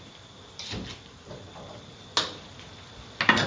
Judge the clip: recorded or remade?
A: recorded